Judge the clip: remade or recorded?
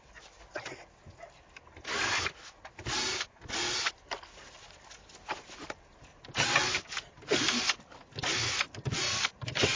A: recorded